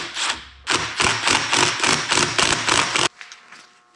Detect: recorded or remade recorded